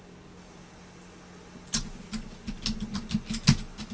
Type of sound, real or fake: real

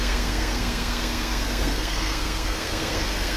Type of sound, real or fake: fake